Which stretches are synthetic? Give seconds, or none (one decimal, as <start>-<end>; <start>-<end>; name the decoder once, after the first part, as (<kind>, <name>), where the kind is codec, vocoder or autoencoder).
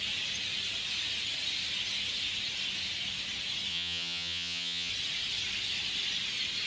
3.7-4.9 (vocoder, HiFi-GAN)